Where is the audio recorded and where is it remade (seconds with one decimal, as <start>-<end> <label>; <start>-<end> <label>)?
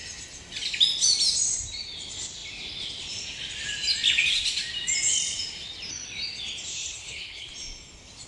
0.0-6.7 recorded; 6.7-7.5 remade; 7.5-8.3 recorded